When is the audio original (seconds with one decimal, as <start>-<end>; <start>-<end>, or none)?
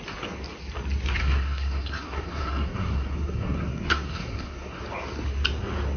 0.0-1.2; 4.8-6.0